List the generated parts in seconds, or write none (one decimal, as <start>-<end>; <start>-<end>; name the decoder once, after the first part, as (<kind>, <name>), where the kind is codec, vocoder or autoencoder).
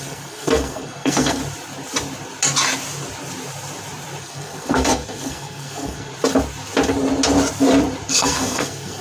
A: 0.0-1.4 (codec, SNAC); 4.2-6.1; 8.1-9.0